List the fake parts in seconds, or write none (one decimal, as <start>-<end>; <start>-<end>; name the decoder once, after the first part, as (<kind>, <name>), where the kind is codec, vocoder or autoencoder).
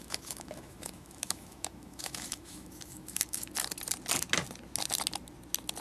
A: 0.0-3.5 (autoencoder, DAC-VAE)